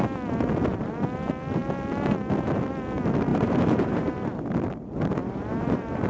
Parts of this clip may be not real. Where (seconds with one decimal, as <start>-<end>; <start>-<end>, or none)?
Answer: 3.3-4.1; 5.2-6.1